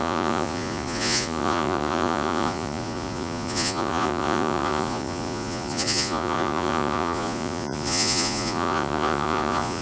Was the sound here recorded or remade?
remade